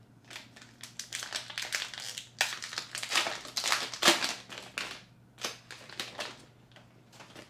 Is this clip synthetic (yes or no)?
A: no